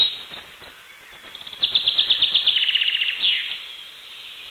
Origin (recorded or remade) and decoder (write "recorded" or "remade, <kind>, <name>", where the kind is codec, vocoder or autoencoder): recorded